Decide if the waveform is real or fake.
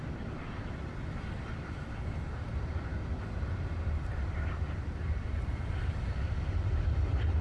fake